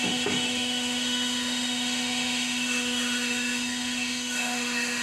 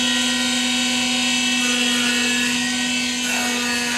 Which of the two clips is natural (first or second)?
second